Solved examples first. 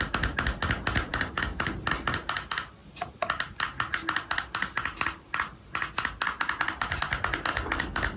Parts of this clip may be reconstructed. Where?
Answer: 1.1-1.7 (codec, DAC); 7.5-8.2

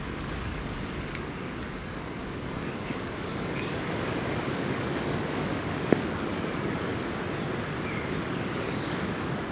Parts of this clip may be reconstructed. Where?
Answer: 0.0-6.9 (codec, DAC); 8.1-9.5

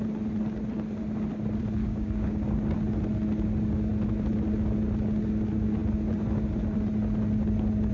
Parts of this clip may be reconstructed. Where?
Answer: 1.8-2.4 (codec, DAC)